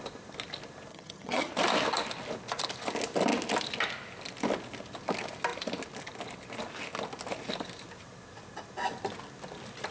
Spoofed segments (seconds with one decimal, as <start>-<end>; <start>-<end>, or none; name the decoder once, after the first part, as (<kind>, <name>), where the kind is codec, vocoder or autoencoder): 0.9-1.5 (vocoder, HiFi-GAN)